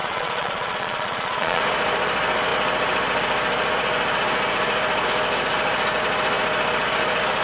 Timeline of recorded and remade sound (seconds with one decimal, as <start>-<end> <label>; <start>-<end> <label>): 0.0-1.6 remade; 1.6-7.4 recorded